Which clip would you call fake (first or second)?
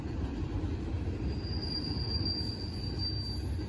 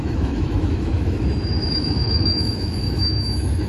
second